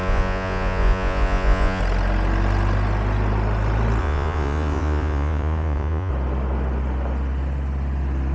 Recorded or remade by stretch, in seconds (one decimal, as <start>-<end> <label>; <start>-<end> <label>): 0.0-1.8 remade; 1.8-4.0 recorded; 4.0-6.1 remade; 6.1-8.3 recorded